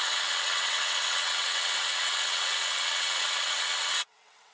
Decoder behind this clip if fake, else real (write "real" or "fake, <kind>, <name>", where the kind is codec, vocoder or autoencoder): fake, vocoder, WaveNeXt